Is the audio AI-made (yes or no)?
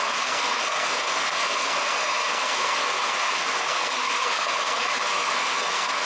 yes